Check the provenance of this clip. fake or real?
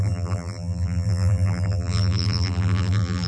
fake